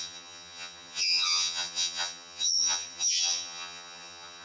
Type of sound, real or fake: fake